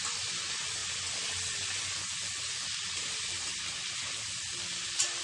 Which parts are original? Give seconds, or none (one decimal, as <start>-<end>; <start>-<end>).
0.0-5.2